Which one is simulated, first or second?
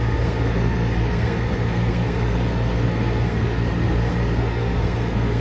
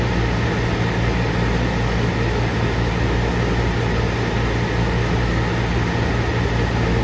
first